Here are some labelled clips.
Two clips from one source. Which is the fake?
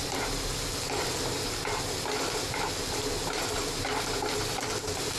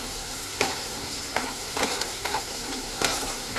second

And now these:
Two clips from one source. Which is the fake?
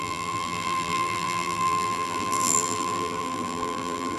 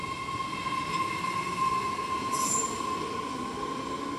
first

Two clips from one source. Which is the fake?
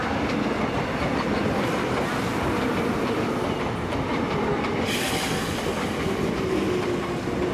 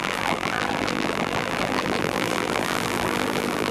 second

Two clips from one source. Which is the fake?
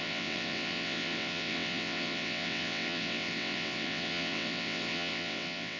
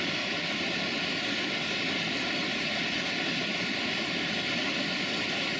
first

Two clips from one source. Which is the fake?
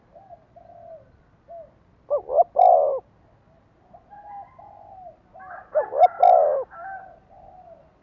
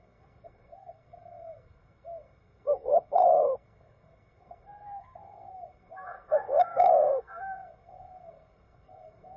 second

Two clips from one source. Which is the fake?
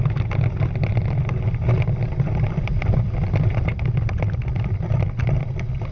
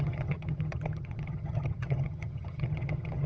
second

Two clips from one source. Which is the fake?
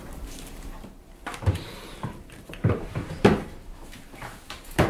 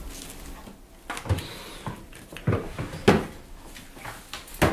first